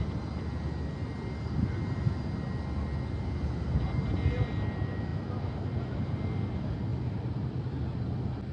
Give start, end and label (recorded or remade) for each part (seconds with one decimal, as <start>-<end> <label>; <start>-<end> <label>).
0.0-8.5 recorded